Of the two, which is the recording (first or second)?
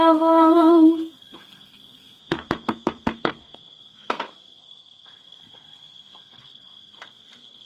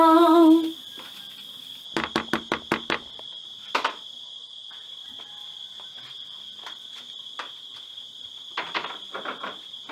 second